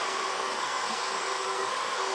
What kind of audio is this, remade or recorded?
remade